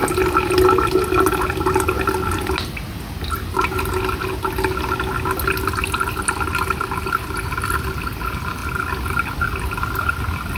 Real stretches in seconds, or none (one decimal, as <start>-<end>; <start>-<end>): 0.0-10.6